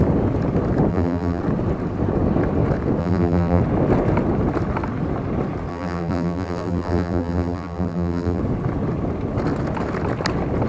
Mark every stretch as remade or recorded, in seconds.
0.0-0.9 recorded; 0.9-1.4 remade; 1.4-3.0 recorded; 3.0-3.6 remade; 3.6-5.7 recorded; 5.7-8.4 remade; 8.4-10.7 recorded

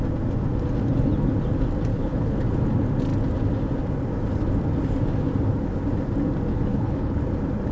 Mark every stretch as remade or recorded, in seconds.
0.0-1.9 recorded; 1.9-2.4 remade; 2.4-6.5 recorded; 6.5-7.2 remade; 7.2-7.7 recorded